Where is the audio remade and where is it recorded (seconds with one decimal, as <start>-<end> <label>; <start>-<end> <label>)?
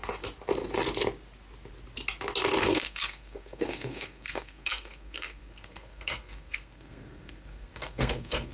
0.0-2.6 recorded; 2.6-8.5 remade